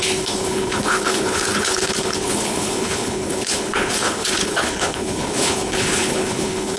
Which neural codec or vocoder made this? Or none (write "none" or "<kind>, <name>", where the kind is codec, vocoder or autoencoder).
codec, HILCodec